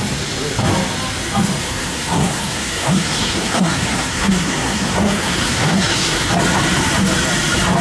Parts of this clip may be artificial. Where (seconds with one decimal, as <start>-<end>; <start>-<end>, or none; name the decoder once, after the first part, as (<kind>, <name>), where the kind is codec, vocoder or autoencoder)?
1.6-6.3 (codec, SNAC)